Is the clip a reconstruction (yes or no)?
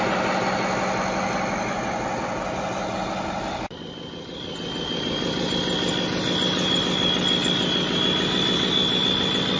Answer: no